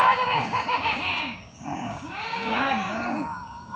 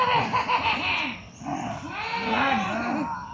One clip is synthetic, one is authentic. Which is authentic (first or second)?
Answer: second